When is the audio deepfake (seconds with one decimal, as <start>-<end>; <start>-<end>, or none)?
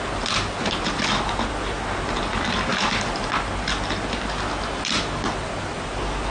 none